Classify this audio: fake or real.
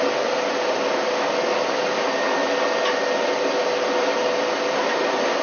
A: real